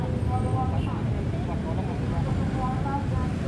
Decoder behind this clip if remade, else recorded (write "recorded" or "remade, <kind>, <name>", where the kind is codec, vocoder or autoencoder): recorded